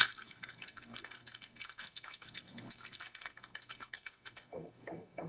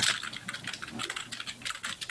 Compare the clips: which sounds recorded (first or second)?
second